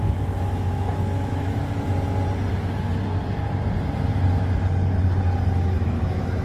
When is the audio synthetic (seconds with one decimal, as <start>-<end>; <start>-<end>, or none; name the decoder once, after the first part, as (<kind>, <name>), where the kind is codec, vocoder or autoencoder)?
0.0-1.6 (autoencoder, DAC-VAE); 2.5-2.9; 5.5-6.4